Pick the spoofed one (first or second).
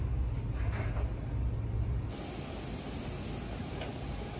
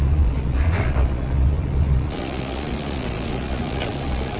second